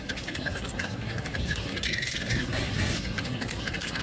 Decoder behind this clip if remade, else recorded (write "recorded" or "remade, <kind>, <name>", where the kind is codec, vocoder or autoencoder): remade, codec, SNAC